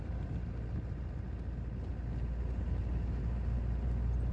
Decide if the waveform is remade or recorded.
recorded